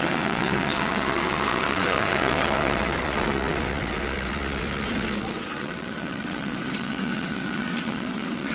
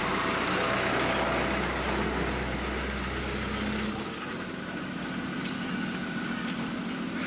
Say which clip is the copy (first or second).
first